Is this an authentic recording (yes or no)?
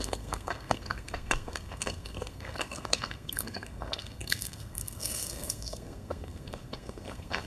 no